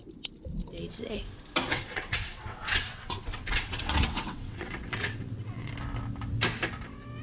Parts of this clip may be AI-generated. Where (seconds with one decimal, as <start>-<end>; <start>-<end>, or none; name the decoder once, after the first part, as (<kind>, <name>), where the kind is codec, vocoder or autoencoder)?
1.7-5.7 (vocoder, WaveNeXt)